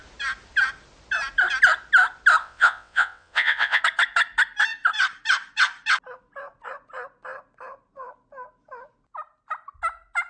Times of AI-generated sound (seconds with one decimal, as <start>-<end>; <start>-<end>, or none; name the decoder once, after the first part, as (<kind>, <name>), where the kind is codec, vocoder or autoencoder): 2.4-3.8 (vocoder, WaveNeXt)